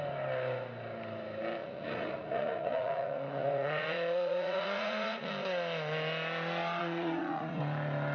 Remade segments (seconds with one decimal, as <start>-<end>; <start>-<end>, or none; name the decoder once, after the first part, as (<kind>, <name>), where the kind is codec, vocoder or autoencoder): 1.6-5.3 (vocoder, Vocos); 6.8-7.6